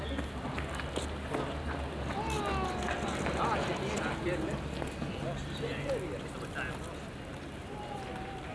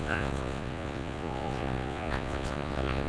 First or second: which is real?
first